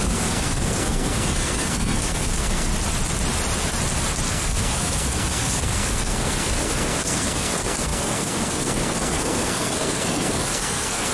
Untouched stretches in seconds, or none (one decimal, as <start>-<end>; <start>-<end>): 2.7-4.3